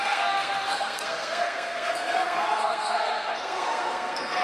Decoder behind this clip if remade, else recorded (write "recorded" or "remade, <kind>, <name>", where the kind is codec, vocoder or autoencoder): remade, codec, SNAC